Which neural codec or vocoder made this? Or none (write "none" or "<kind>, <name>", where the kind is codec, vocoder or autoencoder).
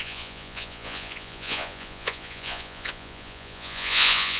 vocoder, Vocos